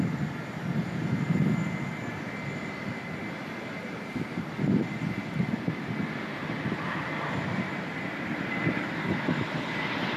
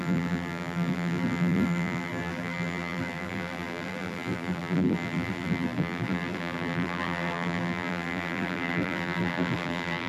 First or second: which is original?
first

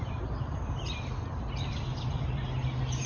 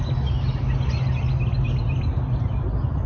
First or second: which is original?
second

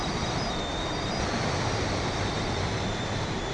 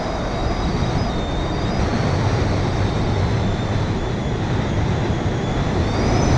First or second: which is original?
second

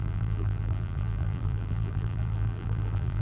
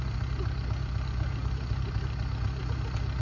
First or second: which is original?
second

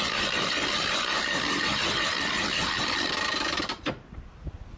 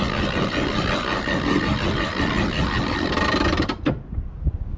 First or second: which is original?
second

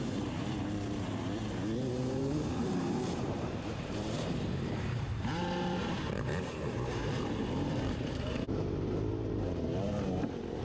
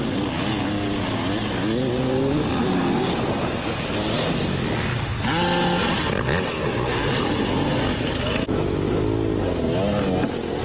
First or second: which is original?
second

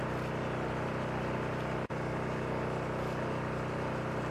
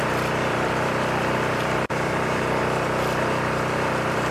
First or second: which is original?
first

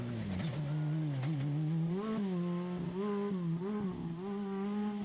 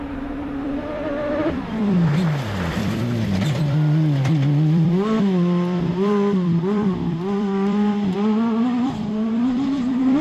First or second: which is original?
first